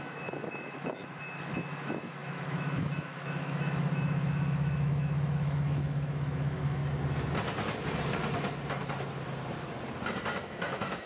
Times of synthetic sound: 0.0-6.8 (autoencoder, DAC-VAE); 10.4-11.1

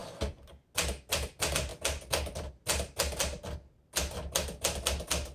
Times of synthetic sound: none

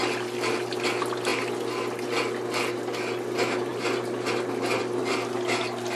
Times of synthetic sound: none